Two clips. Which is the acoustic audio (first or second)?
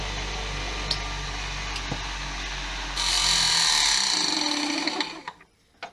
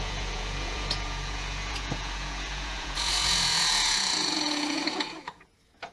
first